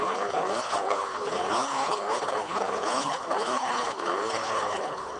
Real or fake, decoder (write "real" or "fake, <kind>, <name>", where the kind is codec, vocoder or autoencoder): fake, codec, HILCodec